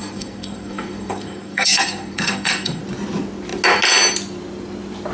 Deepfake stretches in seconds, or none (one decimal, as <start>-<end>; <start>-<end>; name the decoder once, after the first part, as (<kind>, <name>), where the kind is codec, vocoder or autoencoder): 0.0-2.8 (codec, SNAC)